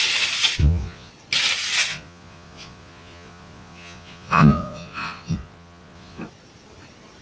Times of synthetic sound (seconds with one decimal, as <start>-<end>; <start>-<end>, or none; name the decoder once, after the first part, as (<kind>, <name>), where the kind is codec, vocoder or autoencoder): 0.6-1.1 (vocoder, Vocos); 1.9-6.2